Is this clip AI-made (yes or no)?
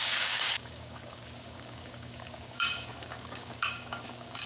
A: yes